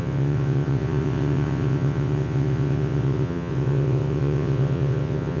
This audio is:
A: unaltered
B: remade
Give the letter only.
B